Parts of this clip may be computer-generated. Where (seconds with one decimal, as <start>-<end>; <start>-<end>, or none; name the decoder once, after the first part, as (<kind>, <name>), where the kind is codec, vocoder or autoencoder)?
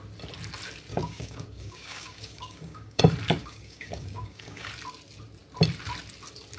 0.9-3.0 (codec, DAC); 3.4-4.7